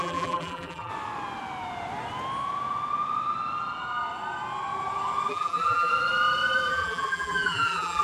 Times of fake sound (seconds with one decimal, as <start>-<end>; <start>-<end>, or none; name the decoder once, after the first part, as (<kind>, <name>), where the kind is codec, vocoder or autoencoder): 0.0-0.9 (vocoder, BigVGAN v2); 5.3-5.9; 6.7-8.0